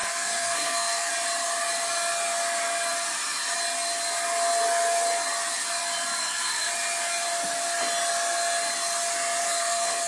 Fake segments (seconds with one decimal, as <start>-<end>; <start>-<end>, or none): 0.0-1.1; 6.2-6.7; 9.4-10.1